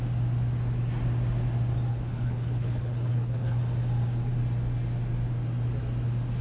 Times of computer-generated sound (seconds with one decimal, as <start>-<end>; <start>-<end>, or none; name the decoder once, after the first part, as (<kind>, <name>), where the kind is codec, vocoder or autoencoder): 1.9-3.6 (codec, HILCodec)